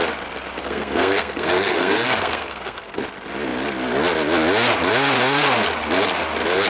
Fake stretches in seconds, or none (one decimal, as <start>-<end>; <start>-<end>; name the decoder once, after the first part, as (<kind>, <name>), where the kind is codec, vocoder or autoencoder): 0.6-3.0 (codec, SNAC)